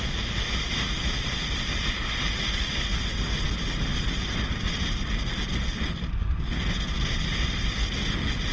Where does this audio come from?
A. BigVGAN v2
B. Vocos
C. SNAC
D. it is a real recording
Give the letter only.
D